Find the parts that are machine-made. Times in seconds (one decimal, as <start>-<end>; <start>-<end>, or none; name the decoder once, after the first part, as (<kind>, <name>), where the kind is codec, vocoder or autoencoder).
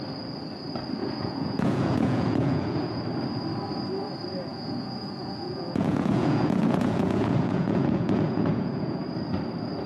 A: 1.0-3.0 (vocoder, Vocos); 4.5-9.0